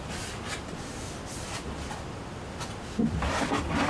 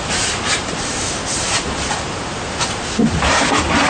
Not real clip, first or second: second